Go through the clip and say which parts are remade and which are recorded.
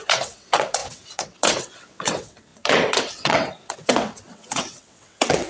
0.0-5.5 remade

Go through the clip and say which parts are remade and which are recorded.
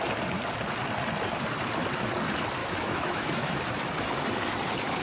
0.0-2.6 recorded; 2.6-3.6 remade; 3.6-5.0 recorded